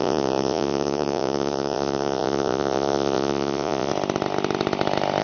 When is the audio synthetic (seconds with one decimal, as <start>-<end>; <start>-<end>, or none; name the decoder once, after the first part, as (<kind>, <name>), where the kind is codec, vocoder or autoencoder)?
0.0-3.9 (vocoder, Vocos)